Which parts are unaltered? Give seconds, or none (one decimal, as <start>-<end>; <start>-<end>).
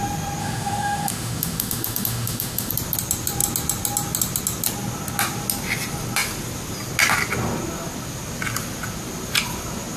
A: 0.0-0.4; 2.7-10.0